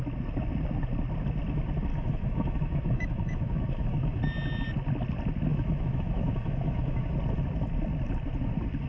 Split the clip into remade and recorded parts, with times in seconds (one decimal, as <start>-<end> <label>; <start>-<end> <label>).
0.0-1.9 recorded; 1.9-4.2 remade; 4.2-5.5 recorded; 5.5-7.1 remade; 7.1-8.9 recorded